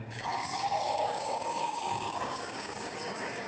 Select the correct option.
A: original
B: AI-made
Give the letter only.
B